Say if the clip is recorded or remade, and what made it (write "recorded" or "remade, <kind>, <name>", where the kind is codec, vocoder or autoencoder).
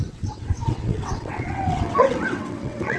remade, vocoder, WaveNeXt